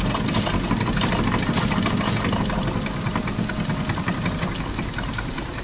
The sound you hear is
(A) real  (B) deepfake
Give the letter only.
A